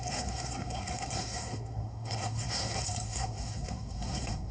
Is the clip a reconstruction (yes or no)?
yes